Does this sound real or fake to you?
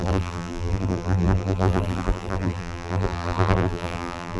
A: fake